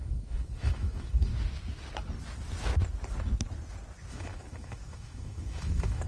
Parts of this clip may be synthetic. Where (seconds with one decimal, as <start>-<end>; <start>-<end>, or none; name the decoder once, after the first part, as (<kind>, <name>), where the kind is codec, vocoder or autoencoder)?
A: 0.0-1.3 (autoencoder, DAC-VAE); 4.1-6.1